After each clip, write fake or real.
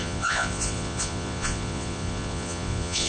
fake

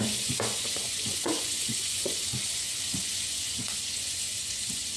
fake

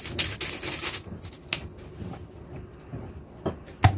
real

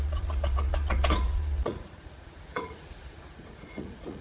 fake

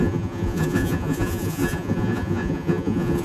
fake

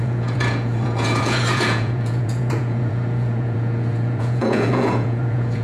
fake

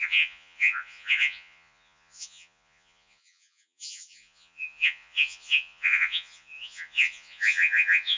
fake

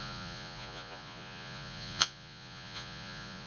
fake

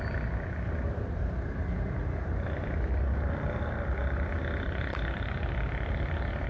real